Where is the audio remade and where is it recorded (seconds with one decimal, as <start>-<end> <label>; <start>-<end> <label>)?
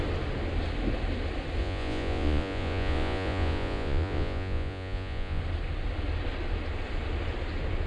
0.0-1.6 recorded; 1.6-5.4 remade; 5.4-7.9 recorded